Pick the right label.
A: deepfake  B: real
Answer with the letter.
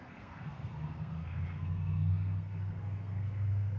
A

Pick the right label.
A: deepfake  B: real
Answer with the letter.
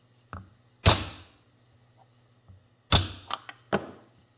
B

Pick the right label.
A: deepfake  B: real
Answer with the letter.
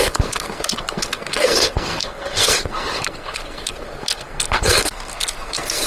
A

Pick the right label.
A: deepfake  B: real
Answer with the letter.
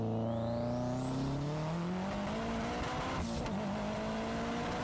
B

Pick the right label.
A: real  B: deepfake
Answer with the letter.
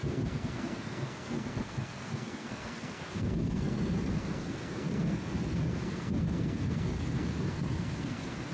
B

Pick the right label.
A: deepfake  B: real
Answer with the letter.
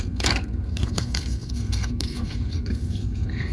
A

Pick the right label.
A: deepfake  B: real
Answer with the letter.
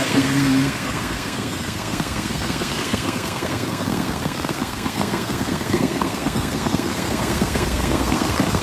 A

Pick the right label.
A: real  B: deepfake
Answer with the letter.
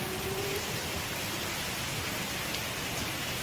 A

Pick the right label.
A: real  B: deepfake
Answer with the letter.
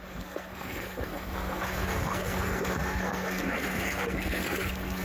B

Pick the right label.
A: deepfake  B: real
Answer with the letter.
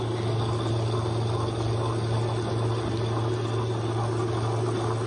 B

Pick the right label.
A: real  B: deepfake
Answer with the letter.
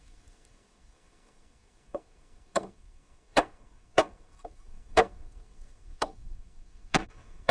B